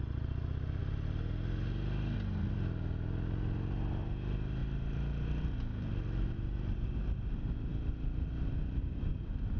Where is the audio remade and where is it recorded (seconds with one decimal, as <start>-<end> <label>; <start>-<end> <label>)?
0.0-9.6 recorded